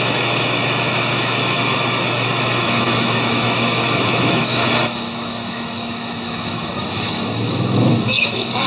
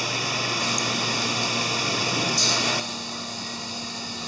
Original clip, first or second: second